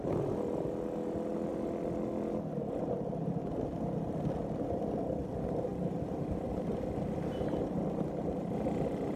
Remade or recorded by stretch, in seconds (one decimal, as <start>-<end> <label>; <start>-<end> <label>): 0.0-9.2 recorded